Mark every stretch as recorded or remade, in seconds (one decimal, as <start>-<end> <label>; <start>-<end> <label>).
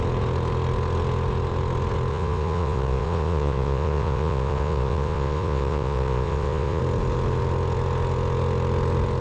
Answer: 0.0-2.1 recorded; 2.1-6.8 remade; 6.8-9.2 recorded